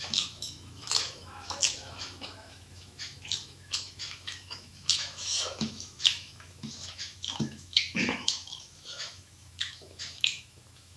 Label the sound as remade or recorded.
remade